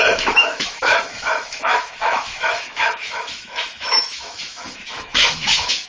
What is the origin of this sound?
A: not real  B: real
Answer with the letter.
A